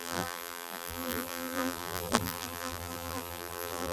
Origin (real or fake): fake